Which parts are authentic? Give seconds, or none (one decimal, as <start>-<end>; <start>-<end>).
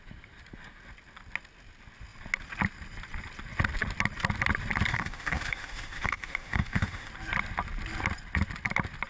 0.0-4.9; 7.1-9.1